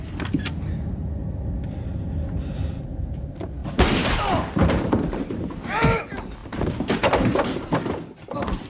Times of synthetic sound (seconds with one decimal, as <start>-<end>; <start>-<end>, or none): 3.6-6.0; 6.4-7.7